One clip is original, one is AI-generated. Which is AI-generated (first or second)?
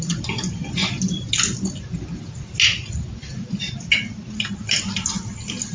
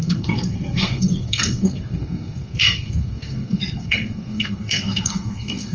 second